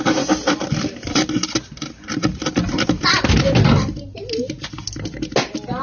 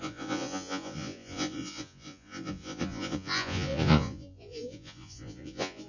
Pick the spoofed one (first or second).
second